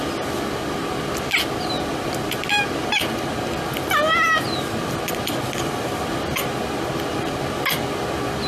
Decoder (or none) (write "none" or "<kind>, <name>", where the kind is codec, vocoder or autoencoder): none